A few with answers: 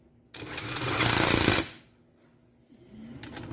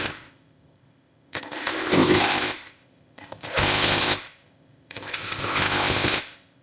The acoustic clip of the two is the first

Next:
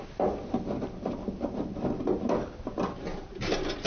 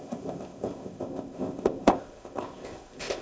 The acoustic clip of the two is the first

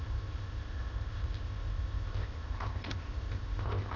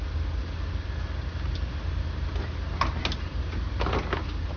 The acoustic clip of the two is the second